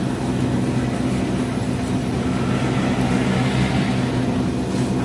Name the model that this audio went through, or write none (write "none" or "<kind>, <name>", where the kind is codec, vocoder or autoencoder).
none